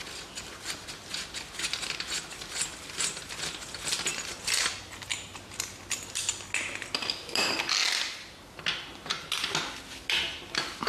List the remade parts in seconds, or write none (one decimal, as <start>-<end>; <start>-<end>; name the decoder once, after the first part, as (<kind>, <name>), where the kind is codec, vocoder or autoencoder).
4.1-4.7 (vocoder, BigVGAN v2)